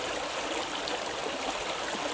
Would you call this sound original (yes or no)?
yes